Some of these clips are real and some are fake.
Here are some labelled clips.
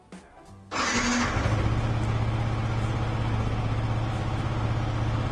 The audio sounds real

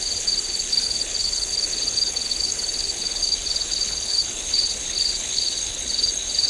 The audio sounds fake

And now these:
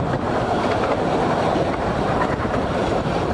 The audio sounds real